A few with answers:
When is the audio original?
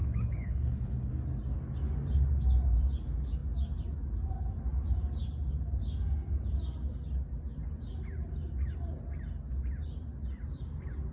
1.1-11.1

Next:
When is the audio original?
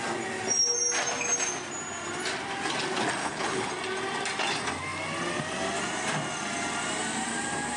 0.0-3.2; 3.7-7.8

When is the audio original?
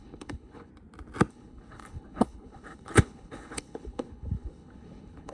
0.7-1.3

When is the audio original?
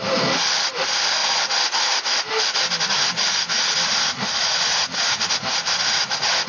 0.0-6.5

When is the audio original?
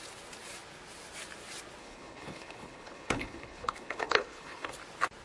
0.0-1.8; 4.7-5.2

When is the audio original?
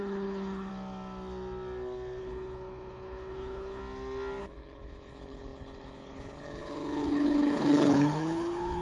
0.7-2.2; 3.8-4.4